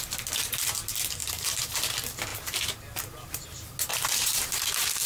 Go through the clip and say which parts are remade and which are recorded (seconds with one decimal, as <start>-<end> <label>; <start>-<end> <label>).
0.0-1.2 recorded; 1.2-1.8 remade; 1.8-3.9 recorded; 3.9-5.1 remade